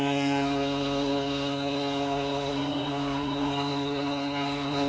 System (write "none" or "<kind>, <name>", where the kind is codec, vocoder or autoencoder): codec, SNAC